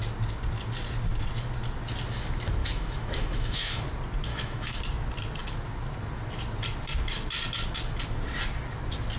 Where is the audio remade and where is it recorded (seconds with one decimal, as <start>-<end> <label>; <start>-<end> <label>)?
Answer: 0.0-2.6 recorded; 2.6-3.8 remade; 3.8-4.3 recorded; 4.3-4.8 remade; 4.8-9.2 recorded